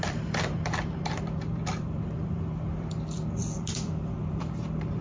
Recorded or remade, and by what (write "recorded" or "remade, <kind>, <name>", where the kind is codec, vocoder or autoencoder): remade, vocoder, BigVGAN v2